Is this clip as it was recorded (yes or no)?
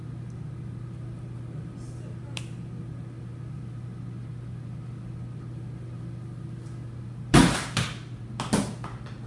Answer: yes